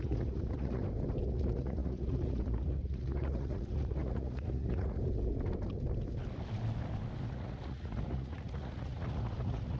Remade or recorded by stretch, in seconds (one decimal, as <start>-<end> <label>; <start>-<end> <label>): 0.0-0.8 remade; 0.8-1.3 recorded; 1.3-5.0 remade; 5.0-7.3 recorded; 7.3-9.8 remade